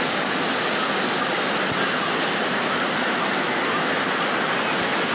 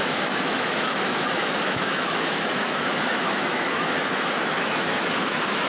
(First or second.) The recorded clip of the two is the first